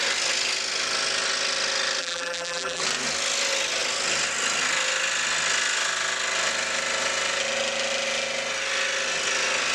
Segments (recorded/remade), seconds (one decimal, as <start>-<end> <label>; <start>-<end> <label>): 0.0-2.0 recorded; 2.0-2.8 remade; 2.8-9.7 recorded

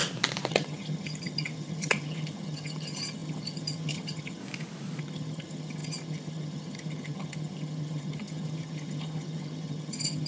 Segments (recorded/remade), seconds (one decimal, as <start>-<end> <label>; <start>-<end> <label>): 0.0-0.5 recorded; 0.5-4.4 remade; 4.4-5.0 recorded; 5.0-10.3 remade